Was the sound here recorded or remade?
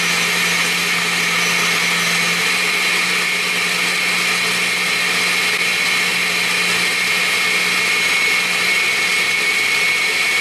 recorded